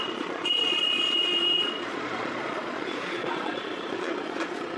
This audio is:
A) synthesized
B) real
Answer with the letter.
A